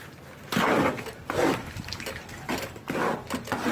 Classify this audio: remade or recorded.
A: recorded